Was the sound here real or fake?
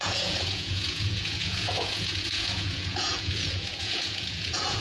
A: fake